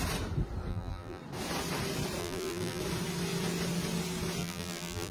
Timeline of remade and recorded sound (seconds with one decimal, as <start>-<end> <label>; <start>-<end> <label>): 0.0-0.7 recorded; 0.7-1.2 remade; 1.2-2.2 recorded; 2.2-2.8 remade; 2.8-4.4 recorded; 4.4-5.1 remade